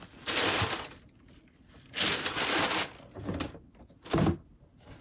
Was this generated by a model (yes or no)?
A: no